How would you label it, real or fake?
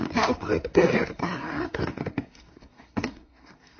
fake